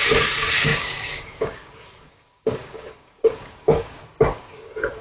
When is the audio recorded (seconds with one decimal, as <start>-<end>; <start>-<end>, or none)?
4.0-4.5